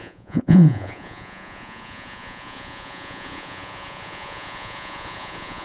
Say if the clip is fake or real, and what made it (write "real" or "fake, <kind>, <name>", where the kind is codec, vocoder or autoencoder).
fake, vocoder, Vocos